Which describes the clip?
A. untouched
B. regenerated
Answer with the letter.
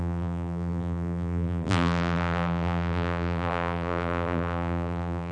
B